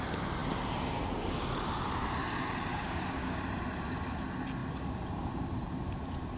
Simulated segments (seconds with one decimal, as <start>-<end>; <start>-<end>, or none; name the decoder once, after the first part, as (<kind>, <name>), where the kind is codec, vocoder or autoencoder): 2.7-3.4 (codec, DAC)

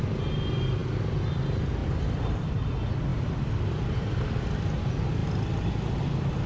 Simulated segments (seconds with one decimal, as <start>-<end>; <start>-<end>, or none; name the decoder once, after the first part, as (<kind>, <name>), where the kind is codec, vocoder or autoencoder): 0.8-1.4 (vocoder, BigVGAN v2); 1.8-2.7; 3.1-4.4

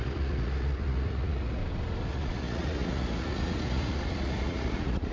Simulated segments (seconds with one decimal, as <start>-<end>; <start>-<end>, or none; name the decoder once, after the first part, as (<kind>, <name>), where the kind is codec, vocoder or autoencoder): 0.0-1.6 (vocoder, Vocos); 2.1-5.1